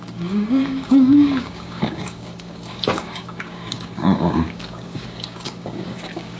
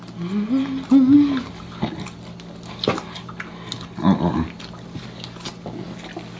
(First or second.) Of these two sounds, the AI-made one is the first